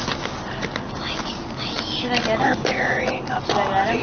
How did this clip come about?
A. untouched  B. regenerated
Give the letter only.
A